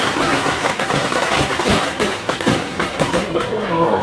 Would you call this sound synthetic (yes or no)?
yes